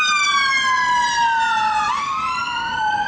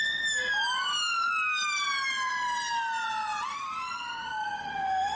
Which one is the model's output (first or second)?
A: first